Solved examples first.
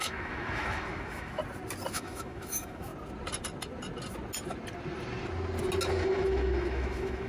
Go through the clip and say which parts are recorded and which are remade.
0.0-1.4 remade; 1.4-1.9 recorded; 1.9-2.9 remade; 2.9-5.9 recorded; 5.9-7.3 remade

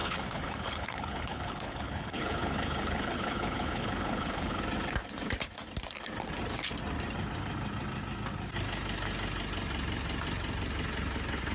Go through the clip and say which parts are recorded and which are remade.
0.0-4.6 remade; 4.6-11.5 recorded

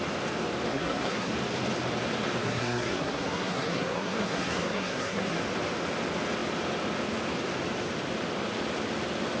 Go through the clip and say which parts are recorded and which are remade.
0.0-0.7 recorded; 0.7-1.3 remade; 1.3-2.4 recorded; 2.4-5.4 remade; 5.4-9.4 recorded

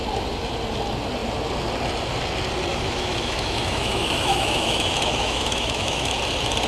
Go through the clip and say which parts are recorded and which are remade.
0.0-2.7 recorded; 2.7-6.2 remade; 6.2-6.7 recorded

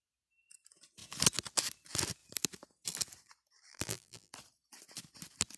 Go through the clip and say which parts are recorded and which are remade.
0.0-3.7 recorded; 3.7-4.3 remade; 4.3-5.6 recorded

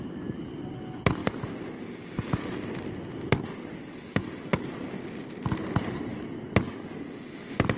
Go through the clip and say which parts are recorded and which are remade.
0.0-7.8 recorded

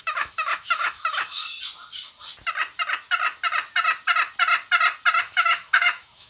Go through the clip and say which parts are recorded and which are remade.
0.0-1.4 remade; 1.4-5.2 recorded; 5.2-6.3 remade